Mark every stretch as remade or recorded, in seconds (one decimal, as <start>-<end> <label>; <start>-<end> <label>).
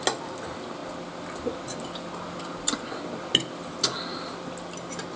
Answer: 0.0-5.2 recorded